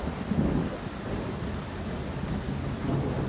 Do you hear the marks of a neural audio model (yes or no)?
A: no